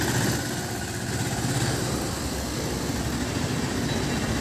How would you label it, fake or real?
real